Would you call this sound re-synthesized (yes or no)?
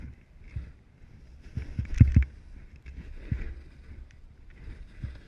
no